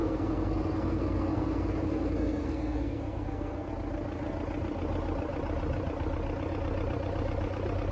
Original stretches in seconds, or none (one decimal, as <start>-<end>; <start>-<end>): 3.7-7.9